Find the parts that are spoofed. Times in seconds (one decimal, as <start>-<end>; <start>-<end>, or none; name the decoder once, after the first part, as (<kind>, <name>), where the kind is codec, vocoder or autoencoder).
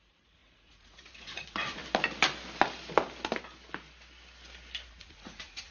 0.0-1.8 (vocoder, Vocos); 4.9-5.7